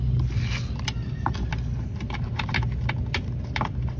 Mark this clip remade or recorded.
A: recorded